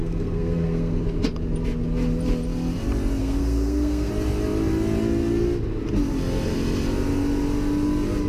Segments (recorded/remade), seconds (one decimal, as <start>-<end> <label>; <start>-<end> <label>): 0.0-1.0 remade; 1.0-3.2 recorded; 3.2-4.1 remade; 4.1-8.3 recorded